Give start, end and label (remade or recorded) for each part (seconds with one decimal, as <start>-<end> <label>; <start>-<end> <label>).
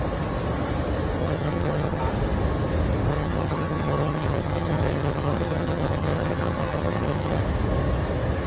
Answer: 0.0-1.2 recorded; 1.2-2.0 remade; 2.0-3.1 recorded; 3.1-7.4 remade; 7.4-8.5 recorded